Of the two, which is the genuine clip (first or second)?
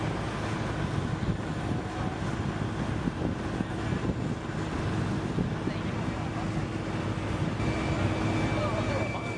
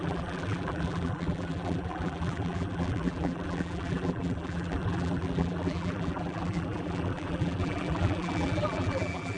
first